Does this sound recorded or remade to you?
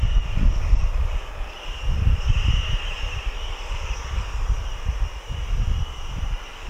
recorded